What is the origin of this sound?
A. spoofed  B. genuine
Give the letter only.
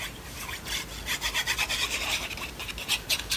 B